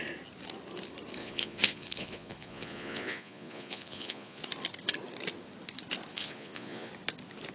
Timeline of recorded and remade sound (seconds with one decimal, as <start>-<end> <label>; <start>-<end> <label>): 0.0-1.2 recorded; 1.2-4.4 remade; 4.4-6.1 recorded; 6.1-6.9 remade; 6.9-7.5 recorded